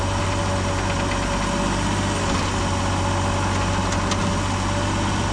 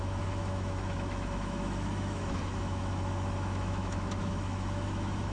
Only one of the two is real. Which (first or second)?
first